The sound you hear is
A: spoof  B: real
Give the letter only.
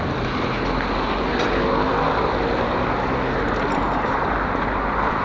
B